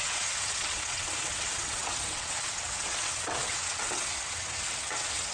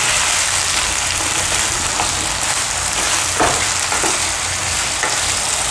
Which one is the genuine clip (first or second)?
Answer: second